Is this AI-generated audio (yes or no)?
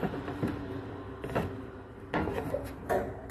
no